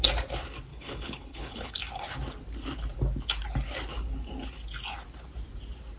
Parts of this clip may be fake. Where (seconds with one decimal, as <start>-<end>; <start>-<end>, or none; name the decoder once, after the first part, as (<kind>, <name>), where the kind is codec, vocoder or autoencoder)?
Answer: 0.7-1.7 (codec, HILCodec)